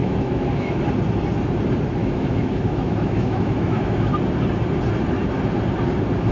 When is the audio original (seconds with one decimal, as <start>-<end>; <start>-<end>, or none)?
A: 0.8-2.0; 4.1-6.3